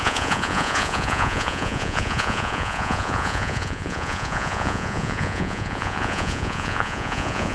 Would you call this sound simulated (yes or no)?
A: yes